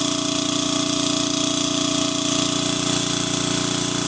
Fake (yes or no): no